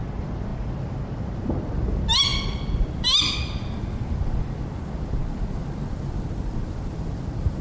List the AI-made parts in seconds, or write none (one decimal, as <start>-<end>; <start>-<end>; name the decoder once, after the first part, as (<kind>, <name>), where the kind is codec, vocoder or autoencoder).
none